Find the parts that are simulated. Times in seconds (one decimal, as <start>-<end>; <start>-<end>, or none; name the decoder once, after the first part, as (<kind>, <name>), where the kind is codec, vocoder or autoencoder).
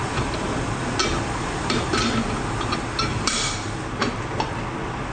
1.0-1.9 (vocoder, BigVGAN v2); 3.1-3.7